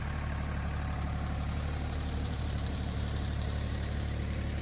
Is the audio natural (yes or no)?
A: no